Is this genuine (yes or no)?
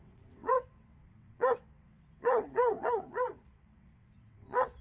no